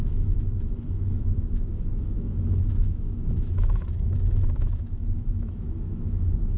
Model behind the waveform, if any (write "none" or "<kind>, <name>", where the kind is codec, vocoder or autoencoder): autoencoder, DAC-VAE